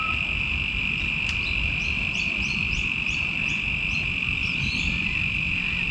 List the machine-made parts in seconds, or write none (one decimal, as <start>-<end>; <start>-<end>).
0.8-3.5; 4.4-5.5